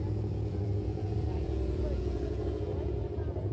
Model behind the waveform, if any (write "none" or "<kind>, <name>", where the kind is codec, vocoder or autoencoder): vocoder, Vocos